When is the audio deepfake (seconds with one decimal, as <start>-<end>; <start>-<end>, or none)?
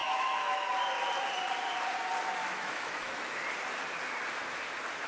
0.0-0.7; 2.4-3.4